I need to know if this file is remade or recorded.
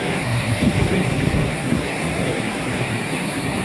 remade